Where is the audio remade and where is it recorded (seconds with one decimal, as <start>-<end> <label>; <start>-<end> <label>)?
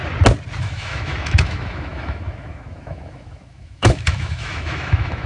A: 0.0-0.6 recorded; 0.6-5.3 remade